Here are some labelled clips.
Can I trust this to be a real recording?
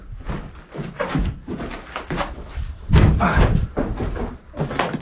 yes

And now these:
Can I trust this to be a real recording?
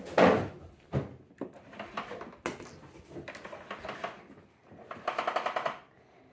yes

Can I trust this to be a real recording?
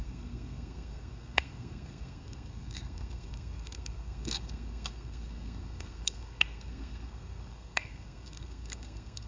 no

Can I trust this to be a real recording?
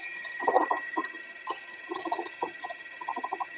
no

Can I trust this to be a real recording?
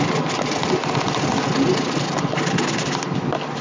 yes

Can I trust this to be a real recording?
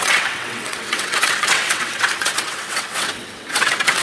no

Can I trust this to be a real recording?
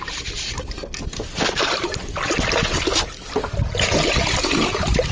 yes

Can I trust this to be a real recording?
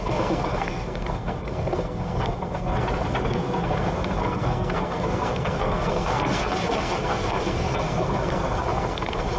no